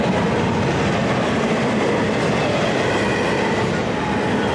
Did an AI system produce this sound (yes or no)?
no